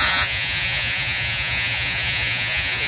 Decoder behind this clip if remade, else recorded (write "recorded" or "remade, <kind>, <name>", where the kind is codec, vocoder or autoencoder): remade, vocoder, Vocos